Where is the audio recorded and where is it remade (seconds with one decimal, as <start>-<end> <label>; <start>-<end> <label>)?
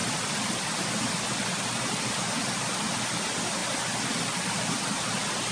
0.0-5.5 recorded